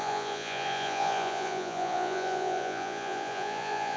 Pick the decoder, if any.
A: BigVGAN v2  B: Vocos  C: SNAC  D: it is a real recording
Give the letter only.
B